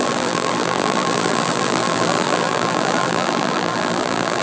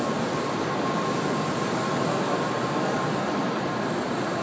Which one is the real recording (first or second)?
second